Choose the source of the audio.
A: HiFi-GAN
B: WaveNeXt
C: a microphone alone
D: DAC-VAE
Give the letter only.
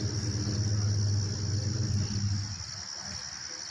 C